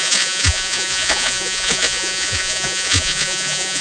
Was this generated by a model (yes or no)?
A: yes